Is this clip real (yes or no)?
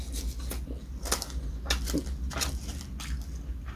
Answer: yes